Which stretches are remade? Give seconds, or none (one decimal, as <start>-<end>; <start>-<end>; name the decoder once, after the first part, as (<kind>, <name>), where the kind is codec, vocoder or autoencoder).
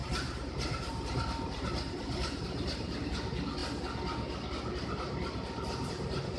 0.0-3.1 (vocoder, BigVGAN v2)